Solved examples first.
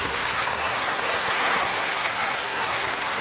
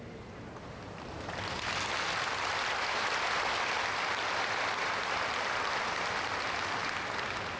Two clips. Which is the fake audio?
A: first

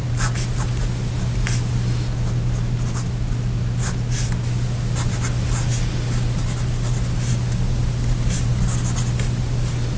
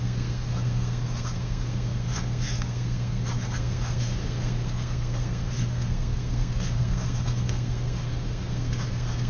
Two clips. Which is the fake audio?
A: second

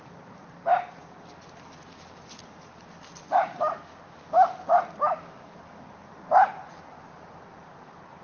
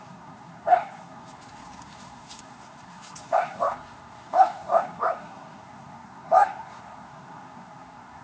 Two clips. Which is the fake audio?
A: second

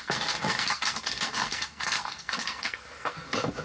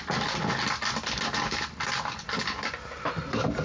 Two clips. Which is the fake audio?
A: first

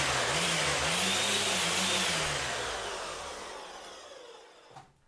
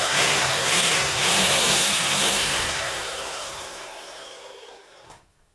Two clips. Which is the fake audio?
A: second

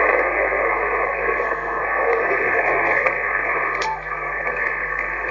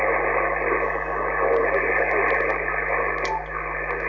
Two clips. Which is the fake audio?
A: first